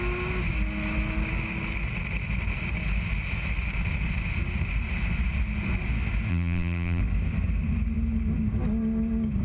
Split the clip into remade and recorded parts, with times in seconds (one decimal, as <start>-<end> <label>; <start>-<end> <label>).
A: 0.0-6.3 recorded; 6.3-7.0 remade; 7.0-9.4 recorded